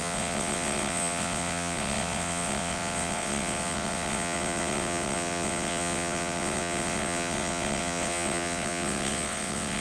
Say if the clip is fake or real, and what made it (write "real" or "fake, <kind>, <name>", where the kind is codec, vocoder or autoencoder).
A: fake, vocoder, WaveNeXt